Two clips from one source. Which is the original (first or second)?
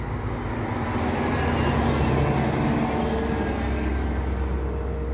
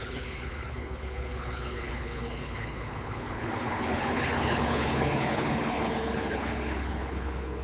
first